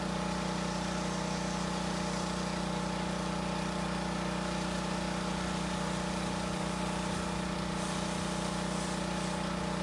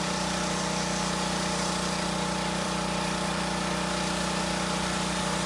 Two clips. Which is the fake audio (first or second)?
second